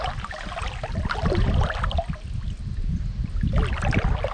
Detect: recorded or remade recorded